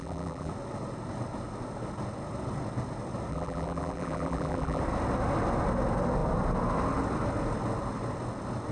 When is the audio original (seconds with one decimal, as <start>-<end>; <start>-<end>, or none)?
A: 0.5-3.3; 4.8-8.7